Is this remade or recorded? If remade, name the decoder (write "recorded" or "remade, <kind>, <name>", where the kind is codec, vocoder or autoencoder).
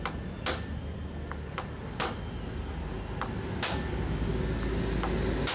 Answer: recorded